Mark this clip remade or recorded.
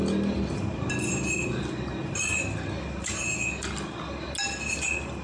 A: recorded